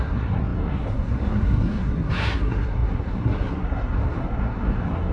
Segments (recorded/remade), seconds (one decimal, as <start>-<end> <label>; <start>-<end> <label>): 0.0-5.1 remade